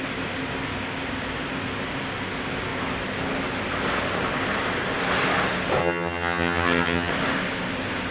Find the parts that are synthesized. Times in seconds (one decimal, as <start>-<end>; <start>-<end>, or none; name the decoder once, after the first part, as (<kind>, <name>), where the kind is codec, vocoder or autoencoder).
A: 5.8-7.1 (vocoder, HiFi-GAN)